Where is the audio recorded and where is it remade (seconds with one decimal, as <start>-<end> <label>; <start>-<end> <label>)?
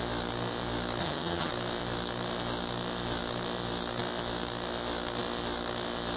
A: 0.0-1.0 recorded; 1.0-1.5 remade; 1.5-6.2 recorded